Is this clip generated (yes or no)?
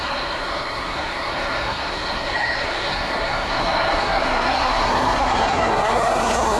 yes